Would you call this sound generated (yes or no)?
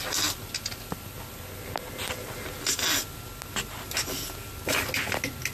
no